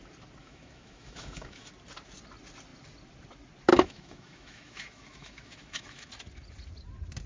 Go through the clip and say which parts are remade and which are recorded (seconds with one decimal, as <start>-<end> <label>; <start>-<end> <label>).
0.0-0.4 recorded; 0.4-1.7 remade; 1.7-3.7 recorded; 3.7-6.1 remade; 6.1-7.3 recorded